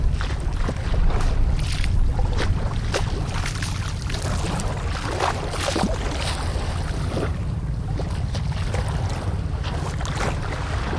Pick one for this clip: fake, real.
real